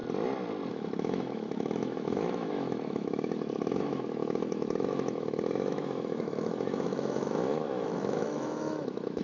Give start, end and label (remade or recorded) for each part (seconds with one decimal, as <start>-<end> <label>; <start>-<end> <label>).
0.0-0.7 recorded; 0.7-9.2 remade